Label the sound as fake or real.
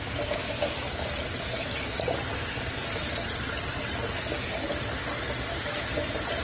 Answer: real